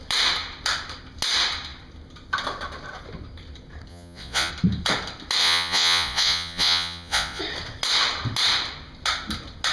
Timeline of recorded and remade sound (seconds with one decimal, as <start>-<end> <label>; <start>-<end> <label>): 0.0-3.9 recorded; 3.9-4.5 remade; 4.5-5.4 recorded; 5.4-7.4 remade; 7.4-9.7 recorded